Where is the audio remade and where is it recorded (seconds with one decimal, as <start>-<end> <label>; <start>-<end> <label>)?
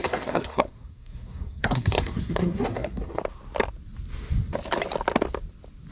0.0-3.2 remade; 3.2-5.9 recorded